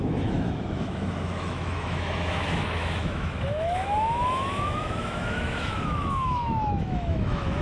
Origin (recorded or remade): remade